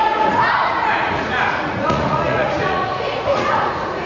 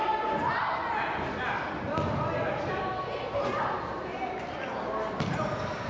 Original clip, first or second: second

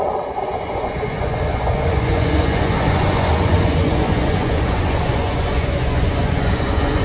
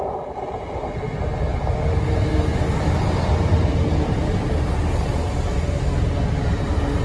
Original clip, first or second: second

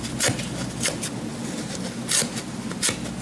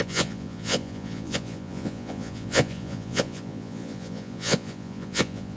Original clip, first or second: first